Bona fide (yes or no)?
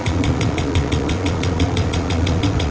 no